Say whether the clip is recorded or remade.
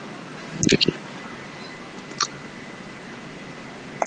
recorded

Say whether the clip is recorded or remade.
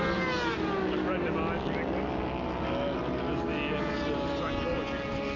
recorded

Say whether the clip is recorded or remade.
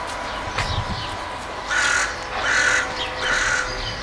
recorded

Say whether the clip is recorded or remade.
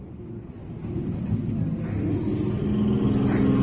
recorded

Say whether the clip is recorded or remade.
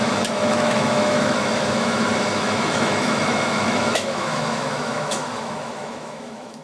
remade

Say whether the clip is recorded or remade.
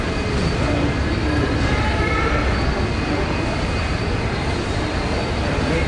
recorded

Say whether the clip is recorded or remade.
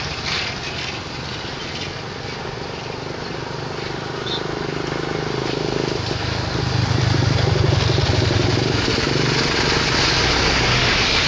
recorded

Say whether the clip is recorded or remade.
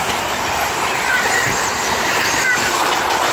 recorded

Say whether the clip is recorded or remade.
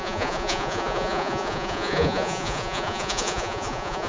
remade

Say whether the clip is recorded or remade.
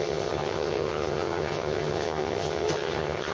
remade